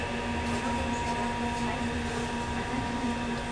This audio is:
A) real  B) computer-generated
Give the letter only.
A